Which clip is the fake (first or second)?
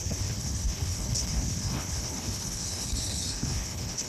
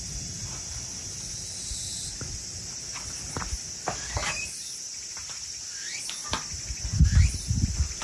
first